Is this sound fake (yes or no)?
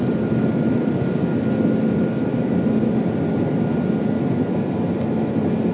no